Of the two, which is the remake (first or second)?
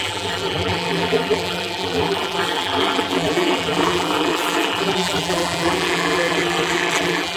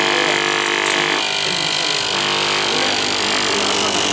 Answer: first